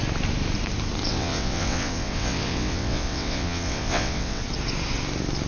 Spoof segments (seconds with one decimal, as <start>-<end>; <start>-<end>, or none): 1.1-4.4

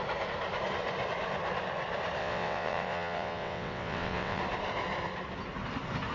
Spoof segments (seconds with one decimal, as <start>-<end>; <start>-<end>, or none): 2.2-4.4

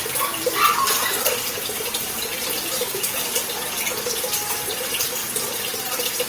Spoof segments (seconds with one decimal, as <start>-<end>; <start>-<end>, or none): 1.0-3.3; 5.2-5.8

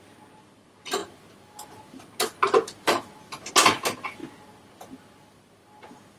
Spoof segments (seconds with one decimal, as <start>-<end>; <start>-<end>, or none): none

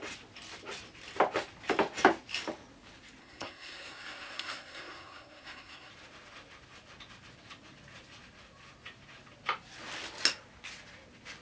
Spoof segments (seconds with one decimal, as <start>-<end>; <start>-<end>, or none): 3.2-5.9